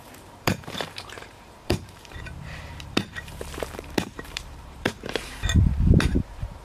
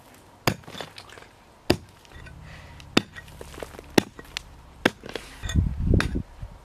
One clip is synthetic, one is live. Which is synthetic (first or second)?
first